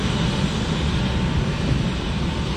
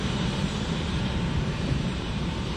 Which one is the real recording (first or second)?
first